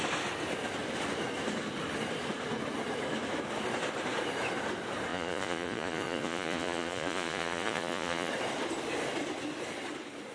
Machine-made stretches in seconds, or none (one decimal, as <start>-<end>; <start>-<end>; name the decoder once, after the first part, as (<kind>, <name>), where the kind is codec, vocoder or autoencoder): 5.1-8.3 (vocoder, Vocos)